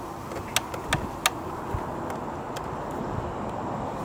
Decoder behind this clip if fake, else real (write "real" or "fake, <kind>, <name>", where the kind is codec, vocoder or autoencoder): real